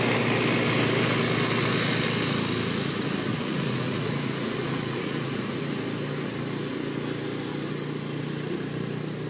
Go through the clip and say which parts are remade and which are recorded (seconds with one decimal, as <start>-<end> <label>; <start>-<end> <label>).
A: 0.0-3.3 recorded; 3.3-5.6 remade; 5.6-9.3 recorded